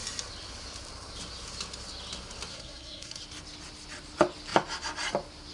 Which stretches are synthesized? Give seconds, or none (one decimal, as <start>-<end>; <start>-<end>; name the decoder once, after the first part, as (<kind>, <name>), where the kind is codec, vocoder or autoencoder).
2.5-3.2 (codec, SNAC)

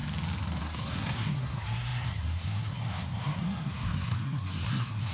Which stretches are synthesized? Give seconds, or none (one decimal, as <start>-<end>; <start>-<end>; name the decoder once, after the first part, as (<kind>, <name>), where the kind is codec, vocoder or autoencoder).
0.6-5.1 (codec, SNAC)